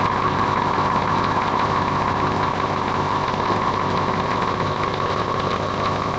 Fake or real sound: fake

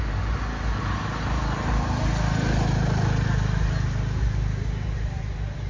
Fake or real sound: real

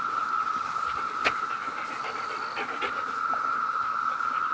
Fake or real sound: real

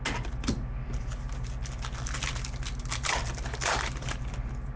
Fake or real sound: real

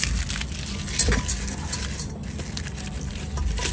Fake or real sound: real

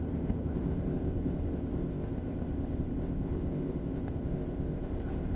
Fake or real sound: fake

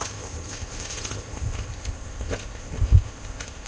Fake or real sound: fake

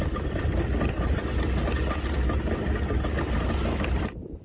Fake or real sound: real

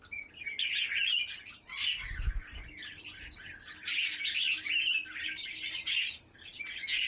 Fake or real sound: real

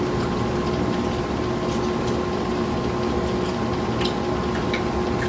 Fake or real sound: real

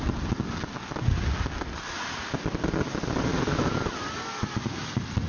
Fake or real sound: real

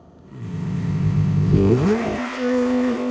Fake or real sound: fake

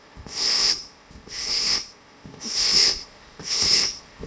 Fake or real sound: fake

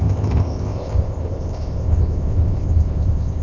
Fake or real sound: fake